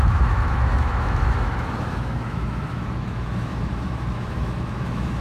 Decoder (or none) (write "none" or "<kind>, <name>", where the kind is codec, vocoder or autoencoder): autoencoder, DAC-VAE